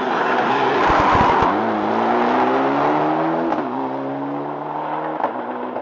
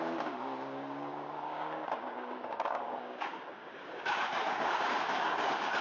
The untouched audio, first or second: first